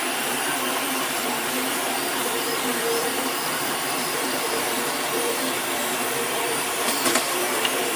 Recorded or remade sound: remade